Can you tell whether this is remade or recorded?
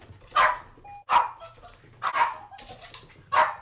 recorded